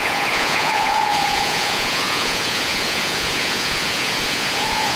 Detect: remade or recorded remade